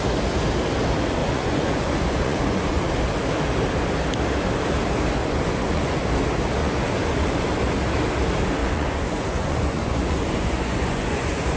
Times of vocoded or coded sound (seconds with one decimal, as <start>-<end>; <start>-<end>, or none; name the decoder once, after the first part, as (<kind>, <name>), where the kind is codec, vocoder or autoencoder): 1.2-2.8 (vocoder, Vocos); 5.2-6.0; 6.6-7.5; 8.6-11.6